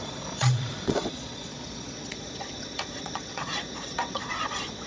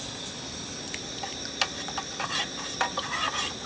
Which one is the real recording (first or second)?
second